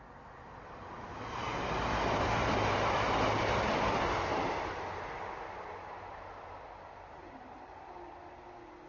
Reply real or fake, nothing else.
real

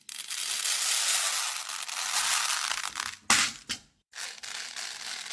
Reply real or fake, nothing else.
real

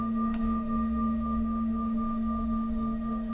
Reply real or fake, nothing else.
fake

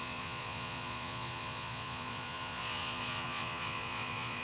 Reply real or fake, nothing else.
fake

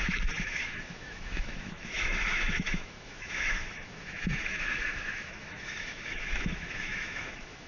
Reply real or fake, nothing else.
fake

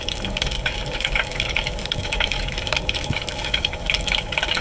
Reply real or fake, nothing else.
fake